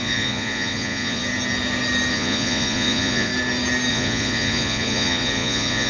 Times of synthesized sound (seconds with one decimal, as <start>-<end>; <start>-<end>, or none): 0.0-1.2; 2.1-3.3; 3.9-5.9